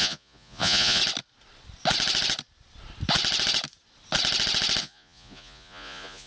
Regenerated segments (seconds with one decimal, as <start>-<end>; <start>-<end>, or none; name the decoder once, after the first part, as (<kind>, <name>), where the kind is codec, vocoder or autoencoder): 0.0-1.0 (vocoder, Vocos); 4.8-6.3

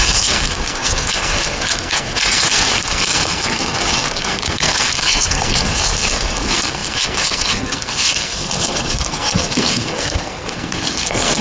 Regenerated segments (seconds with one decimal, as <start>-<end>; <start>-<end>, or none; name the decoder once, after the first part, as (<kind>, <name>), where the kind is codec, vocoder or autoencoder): 0.0-11.4 (codec, SNAC)

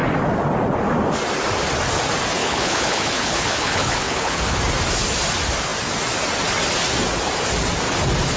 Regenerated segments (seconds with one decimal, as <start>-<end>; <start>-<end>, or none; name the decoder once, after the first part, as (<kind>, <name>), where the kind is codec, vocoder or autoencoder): 2.4-4.6 (codec, HILCodec)

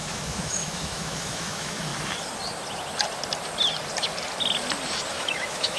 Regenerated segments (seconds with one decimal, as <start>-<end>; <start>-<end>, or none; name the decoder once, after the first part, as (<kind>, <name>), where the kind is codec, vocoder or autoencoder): 0.0-1.9 (autoencoder, DAC-VAE); 5.1-5.8